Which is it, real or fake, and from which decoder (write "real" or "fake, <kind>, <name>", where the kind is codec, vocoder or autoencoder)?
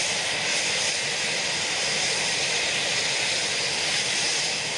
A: real